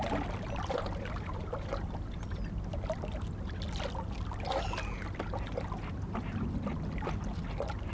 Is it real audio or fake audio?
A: real